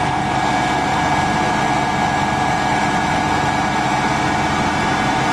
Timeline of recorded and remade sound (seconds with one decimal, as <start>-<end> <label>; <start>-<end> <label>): 0.0-5.3 recorded